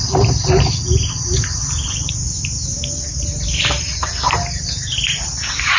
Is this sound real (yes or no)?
yes